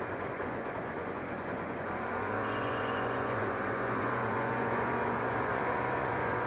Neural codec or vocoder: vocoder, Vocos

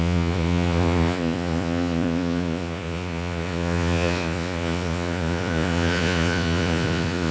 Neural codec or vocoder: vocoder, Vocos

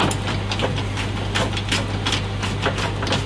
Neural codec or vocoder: none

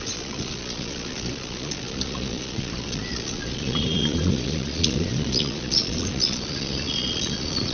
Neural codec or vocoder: vocoder, Vocos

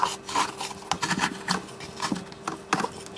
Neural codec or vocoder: none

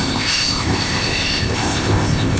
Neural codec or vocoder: codec, ZipCodec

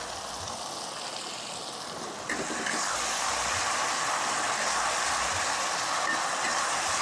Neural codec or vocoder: none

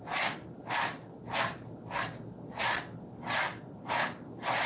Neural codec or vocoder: none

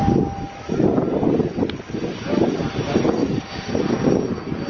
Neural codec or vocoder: none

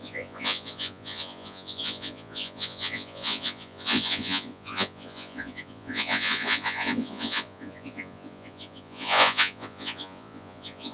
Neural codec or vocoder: vocoder, Vocos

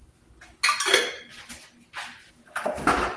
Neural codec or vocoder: none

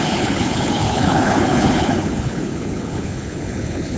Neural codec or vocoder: codec, HILCodec